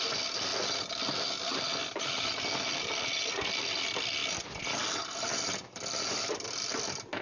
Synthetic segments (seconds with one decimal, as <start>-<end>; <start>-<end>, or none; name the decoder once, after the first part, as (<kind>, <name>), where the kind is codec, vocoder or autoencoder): none